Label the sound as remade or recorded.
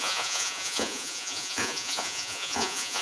remade